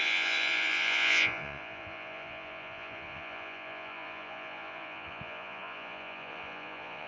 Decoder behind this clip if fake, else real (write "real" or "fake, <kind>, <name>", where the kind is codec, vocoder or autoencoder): fake, vocoder, Vocos